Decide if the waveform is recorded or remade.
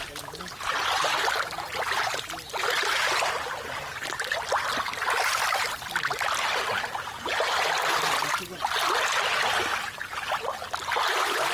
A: recorded